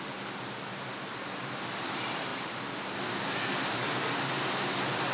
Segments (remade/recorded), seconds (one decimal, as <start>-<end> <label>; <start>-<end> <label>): 0.0-5.1 recorded